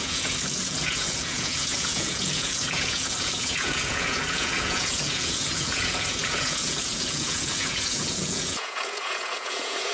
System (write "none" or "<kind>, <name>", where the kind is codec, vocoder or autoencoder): vocoder, Vocos